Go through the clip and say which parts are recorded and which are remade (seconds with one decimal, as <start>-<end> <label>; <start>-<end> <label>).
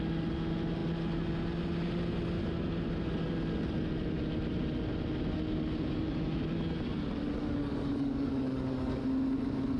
0.0-7.4 recorded; 7.4-9.0 remade; 9.0-9.8 recorded